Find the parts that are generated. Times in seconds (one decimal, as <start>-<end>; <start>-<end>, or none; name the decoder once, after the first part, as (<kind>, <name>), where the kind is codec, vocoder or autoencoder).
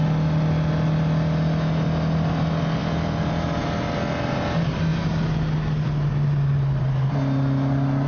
none